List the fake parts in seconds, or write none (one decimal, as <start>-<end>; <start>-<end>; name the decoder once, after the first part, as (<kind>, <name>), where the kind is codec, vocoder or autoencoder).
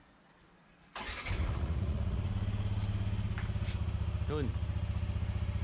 1.4-2.3 (vocoder, Vocos)